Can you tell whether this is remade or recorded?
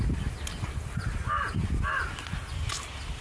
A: recorded